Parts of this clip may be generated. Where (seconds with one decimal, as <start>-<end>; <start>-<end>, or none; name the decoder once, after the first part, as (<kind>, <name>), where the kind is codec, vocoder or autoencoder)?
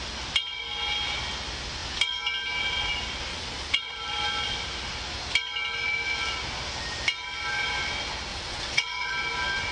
3.3-4.0 (vocoder, Vocos); 8.3-9.1